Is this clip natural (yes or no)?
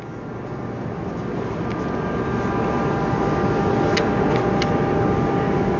yes